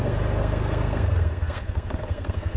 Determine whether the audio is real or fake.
fake